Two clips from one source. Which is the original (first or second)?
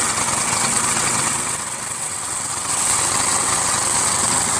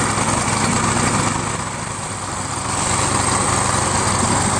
second